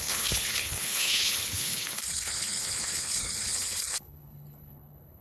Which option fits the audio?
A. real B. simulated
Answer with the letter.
B